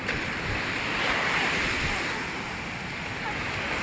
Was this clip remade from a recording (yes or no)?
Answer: no